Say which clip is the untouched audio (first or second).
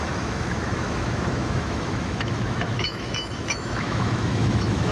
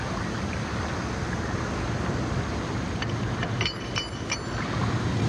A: second